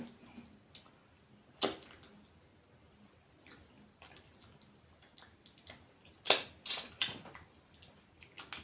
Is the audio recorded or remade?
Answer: recorded